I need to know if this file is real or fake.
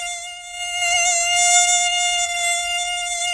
real